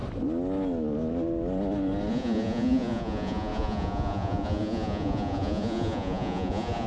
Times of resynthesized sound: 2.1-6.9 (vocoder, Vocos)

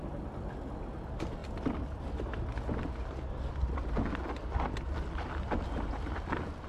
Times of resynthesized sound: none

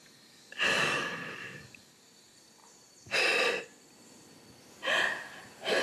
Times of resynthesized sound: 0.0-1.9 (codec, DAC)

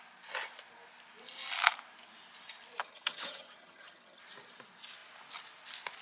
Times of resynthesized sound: 2.8-4.2 (vocoder, HiFi-GAN)

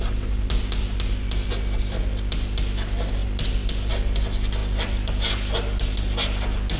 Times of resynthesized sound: none